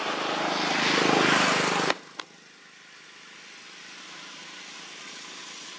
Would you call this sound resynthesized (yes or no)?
no